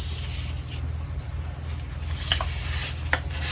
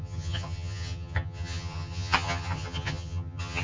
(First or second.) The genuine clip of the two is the first